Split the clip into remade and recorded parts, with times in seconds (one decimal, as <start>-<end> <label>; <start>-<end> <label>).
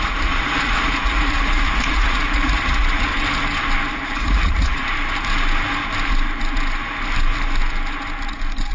0.0-3.1 remade; 3.1-3.9 recorded; 3.9-4.8 remade; 4.8-8.7 recorded